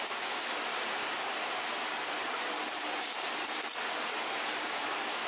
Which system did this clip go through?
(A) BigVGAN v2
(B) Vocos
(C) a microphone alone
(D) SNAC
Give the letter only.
A